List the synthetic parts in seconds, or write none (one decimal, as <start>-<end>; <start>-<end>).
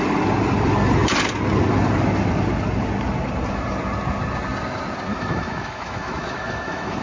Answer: 5.1-7.0